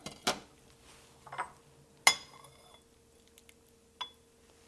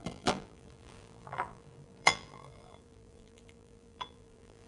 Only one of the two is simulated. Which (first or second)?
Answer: second